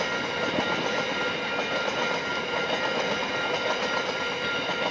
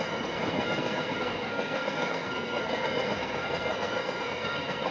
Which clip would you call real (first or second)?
first